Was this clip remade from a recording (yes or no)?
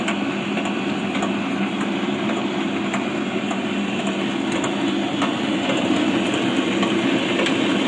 no